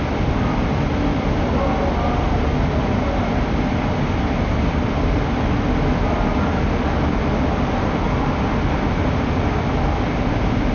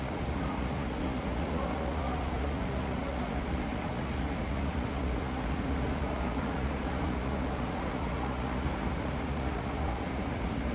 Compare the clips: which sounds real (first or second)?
first